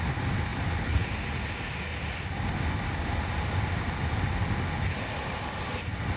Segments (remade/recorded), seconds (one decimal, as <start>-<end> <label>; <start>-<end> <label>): 0.0-6.2 recorded